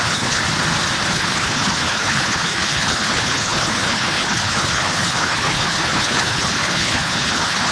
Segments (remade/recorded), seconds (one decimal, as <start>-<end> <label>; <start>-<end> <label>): 0.0-0.4 remade; 0.4-1.1 recorded; 1.1-7.7 remade

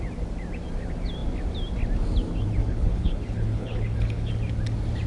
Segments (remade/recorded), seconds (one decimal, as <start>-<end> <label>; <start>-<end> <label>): 0.0-2.6 recorded; 2.6-4.3 remade; 4.3-5.1 recorded

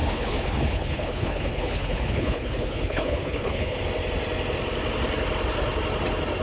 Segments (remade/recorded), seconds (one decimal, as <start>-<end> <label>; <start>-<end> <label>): 0.0-3.8 remade; 3.8-6.4 recorded

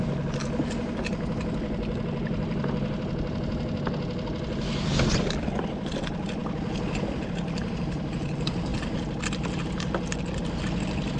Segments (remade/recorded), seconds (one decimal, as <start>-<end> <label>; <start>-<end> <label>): 0.0-11.2 recorded

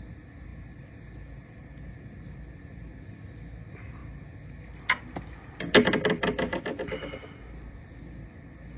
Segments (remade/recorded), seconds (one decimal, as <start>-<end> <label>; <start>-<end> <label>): 0.0-8.8 recorded

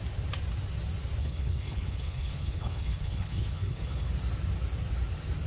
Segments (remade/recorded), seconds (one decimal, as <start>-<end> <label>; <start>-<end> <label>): 0.0-1.2 recorded; 1.2-4.1 remade; 4.1-5.5 recorded

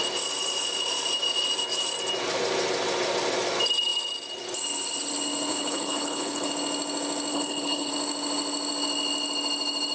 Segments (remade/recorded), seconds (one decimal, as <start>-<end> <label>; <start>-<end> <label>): 0.0-5.5 recorded; 5.5-6.5 remade; 6.5-7.3 recorded; 7.3-7.9 remade; 7.9-9.9 recorded